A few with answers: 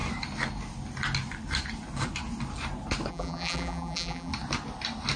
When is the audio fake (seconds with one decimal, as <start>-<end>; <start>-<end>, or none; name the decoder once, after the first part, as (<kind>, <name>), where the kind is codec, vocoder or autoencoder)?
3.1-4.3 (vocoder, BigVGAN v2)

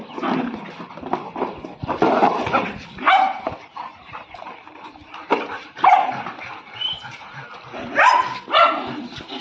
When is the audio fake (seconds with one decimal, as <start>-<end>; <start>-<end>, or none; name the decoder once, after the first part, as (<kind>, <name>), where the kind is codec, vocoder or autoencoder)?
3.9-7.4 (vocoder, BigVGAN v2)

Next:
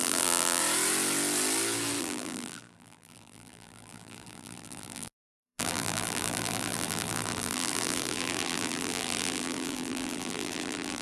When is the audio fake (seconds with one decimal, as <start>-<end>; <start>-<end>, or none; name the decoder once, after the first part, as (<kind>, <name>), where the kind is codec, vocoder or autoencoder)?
0.0-0.6 (vocoder, BigVGAN v2); 2.0-11.0

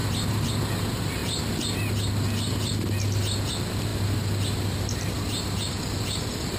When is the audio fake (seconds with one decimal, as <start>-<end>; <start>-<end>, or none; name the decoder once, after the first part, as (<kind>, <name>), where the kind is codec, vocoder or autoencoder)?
0.0-0.5 (vocoder, BigVGAN v2)